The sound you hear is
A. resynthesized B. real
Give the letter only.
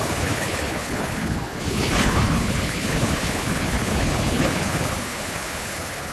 A